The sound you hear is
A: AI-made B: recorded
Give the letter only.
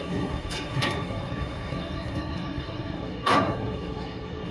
A